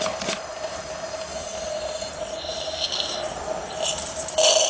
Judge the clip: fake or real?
real